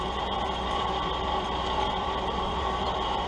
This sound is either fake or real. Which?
fake